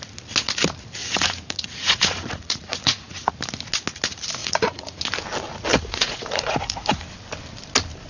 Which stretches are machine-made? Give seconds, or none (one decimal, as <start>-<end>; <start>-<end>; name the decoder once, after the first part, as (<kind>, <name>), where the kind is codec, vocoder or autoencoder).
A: 1.0-3.3 (vocoder, Vocos); 4.4-5.0; 5.7-7.0